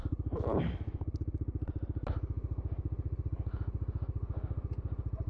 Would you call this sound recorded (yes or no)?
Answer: yes